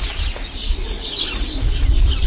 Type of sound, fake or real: real